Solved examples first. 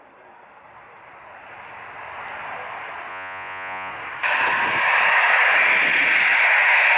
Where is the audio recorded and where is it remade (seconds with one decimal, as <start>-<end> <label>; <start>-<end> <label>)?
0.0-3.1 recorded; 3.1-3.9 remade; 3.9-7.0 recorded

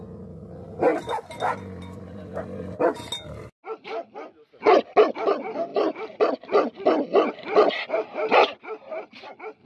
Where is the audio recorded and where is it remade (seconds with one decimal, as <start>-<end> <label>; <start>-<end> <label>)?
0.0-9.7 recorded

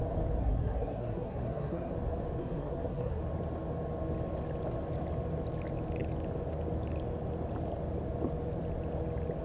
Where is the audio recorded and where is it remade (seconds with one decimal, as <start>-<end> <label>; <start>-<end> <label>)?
0.0-0.4 recorded; 0.4-1.9 remade; 1.9-2.4 recorded; 2.4-3.2 remade; 3.2-9.4 recorded

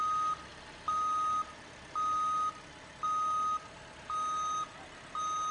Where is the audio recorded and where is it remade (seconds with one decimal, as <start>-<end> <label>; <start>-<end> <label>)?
0.0-5.5 recorded

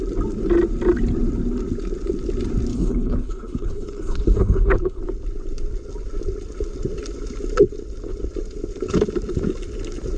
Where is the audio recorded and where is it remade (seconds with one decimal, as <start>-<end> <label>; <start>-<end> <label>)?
0.0-2.7 recorded; 2.7-5.0 remade; 5.0-10.2 recorded